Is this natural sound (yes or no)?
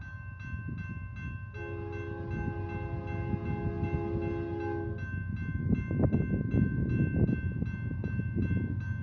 yes